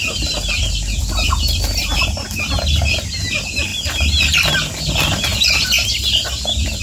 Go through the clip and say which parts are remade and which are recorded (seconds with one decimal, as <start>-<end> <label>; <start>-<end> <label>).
0.0-1.2 recorded; 1.2-2.1 remade; 2.1-3.7 recorded; 3.7-4.5 remade; 4.5-6.8 recorded